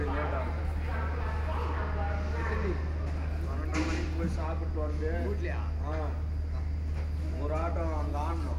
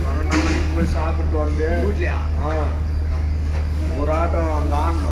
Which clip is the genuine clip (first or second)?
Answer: first